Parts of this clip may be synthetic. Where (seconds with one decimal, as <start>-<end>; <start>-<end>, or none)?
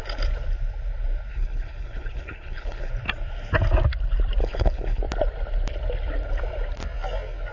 1.3-2.9; 4.4-5.0